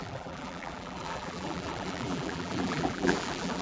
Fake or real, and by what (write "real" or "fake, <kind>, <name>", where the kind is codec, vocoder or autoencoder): fake, vocoder, BigVGAN v2